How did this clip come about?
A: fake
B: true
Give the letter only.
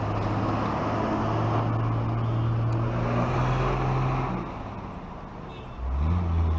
B